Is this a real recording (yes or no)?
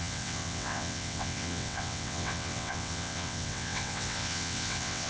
no